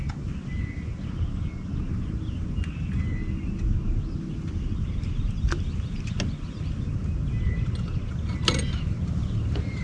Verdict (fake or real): real